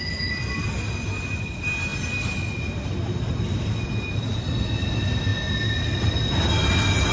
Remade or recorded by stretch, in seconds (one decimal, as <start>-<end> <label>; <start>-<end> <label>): 0.0-7.1 recorded